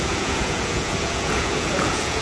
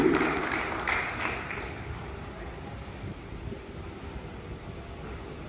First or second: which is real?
second